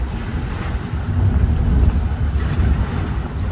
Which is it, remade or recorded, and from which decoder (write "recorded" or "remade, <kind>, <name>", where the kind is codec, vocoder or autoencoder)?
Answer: recorded